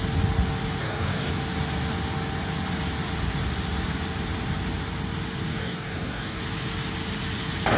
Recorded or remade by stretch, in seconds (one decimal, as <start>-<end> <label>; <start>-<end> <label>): 0.0-0.8 recorded; 0.8-1.3 remade; 1.3-5.5 recorded; 5.5-6.4 remade; 6.4-7.8 recorded